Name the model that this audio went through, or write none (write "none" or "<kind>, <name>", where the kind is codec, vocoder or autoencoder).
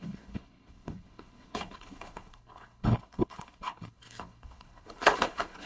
codec, HILCodec